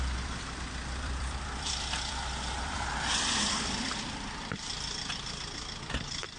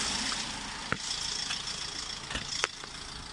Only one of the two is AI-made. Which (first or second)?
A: first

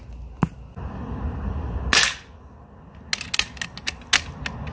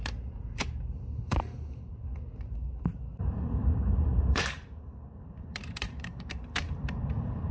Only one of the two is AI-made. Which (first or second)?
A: second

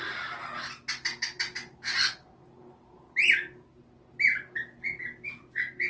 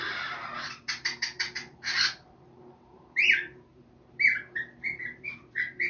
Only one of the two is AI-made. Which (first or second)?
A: second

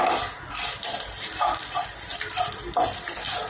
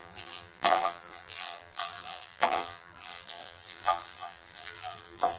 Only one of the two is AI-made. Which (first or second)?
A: second